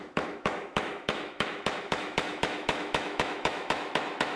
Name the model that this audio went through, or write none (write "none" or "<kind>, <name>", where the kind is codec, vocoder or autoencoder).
autoencoder, DAC-VAE